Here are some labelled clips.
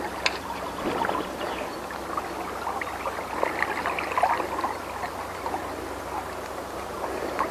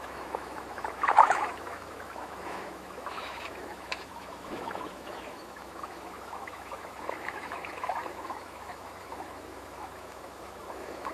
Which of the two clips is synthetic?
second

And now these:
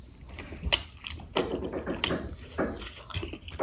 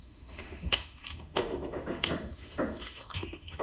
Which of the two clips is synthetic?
second